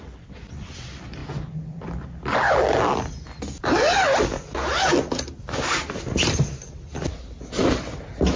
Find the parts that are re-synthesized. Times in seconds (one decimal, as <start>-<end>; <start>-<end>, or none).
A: none